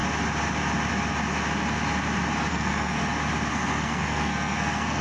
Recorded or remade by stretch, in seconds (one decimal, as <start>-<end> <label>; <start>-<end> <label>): 0.0-2.5 recorded; 2.5-3.0 remade; 3.0-3.5 recorded; 3.5-5.0 remade